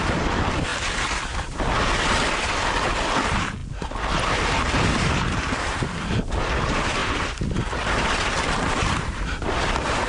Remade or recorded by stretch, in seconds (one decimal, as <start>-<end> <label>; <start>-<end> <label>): 0.0-10.1 recorded

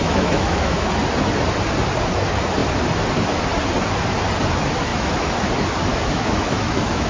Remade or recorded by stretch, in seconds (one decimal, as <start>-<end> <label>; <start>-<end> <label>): 0.0-0.9 remade; 0.9-4.9 recorded; 4.9-5.5 remade; 5.5-5.9 recorded; 5.9-7.1 remade

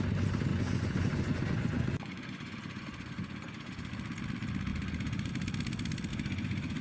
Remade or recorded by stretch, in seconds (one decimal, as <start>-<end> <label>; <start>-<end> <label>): 0.0-0.5 recorded; 0.5-3.9 remade; 3.9-4.7 recorded; 4.7-5.3 remade; 5.3-6.1 recorded; 6.1-6.8 remade

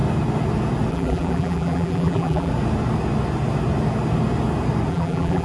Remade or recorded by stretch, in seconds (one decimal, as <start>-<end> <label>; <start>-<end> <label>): 0.0-0.9 recorded; 0.9-2.5 remade; 2.5-4.9 recorded; 4.9-5.4 remade

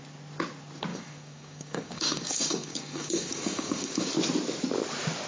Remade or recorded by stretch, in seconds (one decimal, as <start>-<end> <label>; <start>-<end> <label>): 0.0-0.9 recorded; 0.9-4.1 remade; 4.1-5.3 recorded

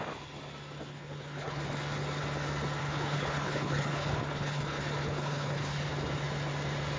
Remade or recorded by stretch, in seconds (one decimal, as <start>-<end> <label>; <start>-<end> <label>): 0.0-0.9 recorded; 0.9-1.6 remade; 1.6-2.8 recorded; 2.8-5.9 remade; 5.9-7.0 recorded